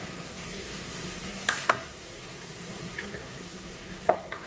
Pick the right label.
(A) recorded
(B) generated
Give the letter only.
B